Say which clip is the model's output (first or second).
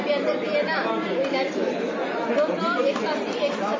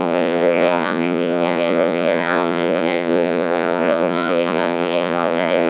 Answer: second